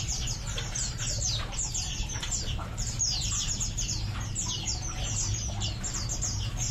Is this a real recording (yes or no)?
no